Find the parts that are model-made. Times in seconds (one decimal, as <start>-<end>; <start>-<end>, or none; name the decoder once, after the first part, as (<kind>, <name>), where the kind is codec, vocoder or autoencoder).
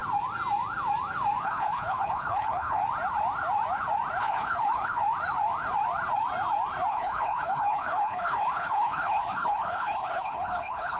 1.4-2.8 (codec, HILCodec); 4.2-5.0; 6.9-11.0